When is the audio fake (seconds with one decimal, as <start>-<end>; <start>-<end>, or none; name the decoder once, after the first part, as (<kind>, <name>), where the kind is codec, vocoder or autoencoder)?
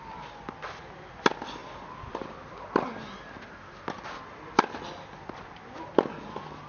none